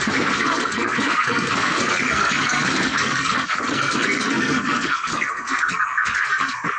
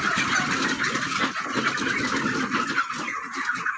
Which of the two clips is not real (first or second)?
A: first